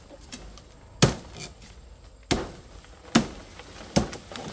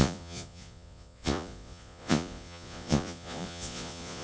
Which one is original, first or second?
first